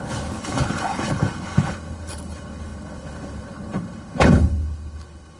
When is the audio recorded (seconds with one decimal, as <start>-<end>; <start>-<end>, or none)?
none